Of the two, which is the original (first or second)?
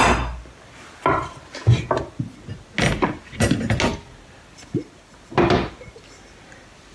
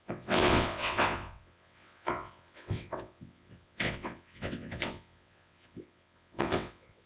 first